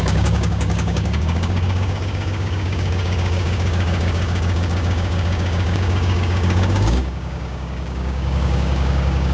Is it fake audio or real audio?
fake